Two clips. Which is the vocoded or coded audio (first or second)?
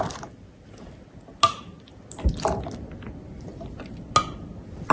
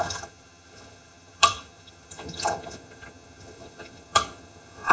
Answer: second